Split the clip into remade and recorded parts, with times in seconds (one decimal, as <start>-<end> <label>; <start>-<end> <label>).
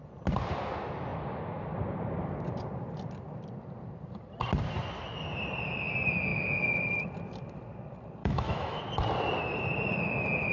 0.0-8.2 recorded; 8.2-8.8 remade; 8.8-10.5 recorded